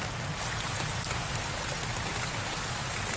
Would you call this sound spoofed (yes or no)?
no